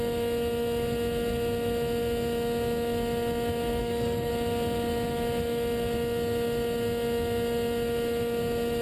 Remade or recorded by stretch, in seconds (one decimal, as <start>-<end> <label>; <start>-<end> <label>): 0.0-3.8 recorded; 3.8-4.3 remade; 4.3-8.8 recorded